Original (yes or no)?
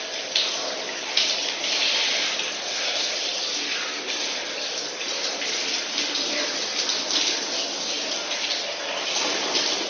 yes